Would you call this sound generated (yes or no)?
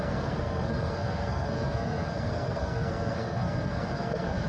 yes